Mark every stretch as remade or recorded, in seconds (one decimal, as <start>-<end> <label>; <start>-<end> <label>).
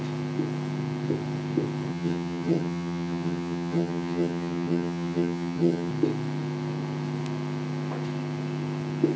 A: 0.0-1.9 recorded; 1.9-5.9 remade; 5.9-9.2 recorded